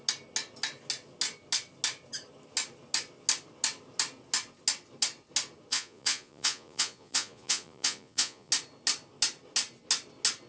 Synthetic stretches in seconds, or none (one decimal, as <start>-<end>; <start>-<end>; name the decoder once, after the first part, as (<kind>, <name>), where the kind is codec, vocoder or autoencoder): 5.7-8.5 (vocoder, Vocos)